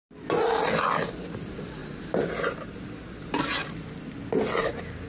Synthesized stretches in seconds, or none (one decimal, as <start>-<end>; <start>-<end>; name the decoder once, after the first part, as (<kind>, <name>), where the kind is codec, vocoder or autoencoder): 1.8-3.4 (vocoder, BigVGAN v2)